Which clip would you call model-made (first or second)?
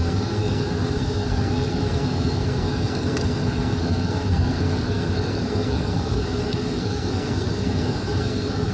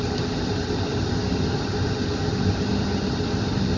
first